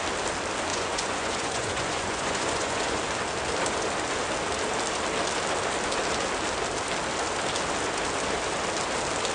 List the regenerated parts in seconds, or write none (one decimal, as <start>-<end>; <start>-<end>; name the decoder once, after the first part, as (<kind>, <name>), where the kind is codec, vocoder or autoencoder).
0.7-3.0 (vocoder, Vocos)